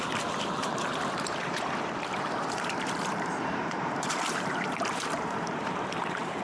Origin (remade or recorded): remade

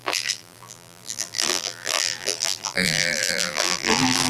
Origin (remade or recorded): remade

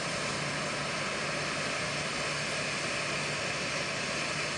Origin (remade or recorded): recorded